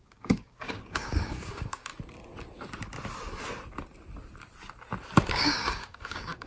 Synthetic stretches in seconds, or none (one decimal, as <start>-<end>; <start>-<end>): 0.0-1.9; 5.3-6.5